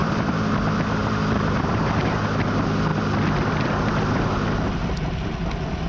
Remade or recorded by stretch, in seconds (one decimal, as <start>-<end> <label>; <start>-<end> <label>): 0.0-0.5 remade; 0.5-1.0 recorded; 1.0-2.2 remade; 2.2-5.9 recorded